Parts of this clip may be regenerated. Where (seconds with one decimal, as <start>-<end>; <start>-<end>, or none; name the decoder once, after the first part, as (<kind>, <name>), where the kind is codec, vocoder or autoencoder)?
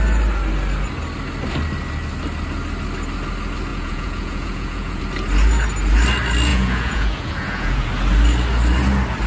3.7-5.0 (vocoder, Vocos); 6.5-7.9